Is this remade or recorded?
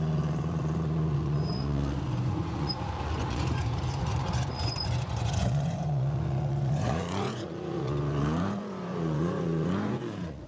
remade